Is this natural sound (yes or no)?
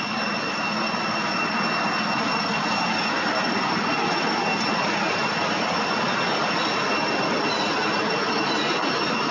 yes